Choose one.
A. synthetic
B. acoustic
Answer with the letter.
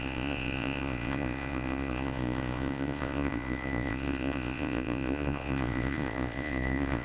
A